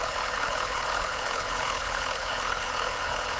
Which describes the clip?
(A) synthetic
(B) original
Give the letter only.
A